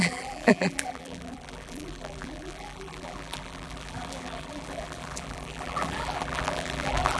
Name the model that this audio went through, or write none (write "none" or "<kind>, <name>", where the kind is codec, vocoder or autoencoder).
vocoder, BigVGAN v2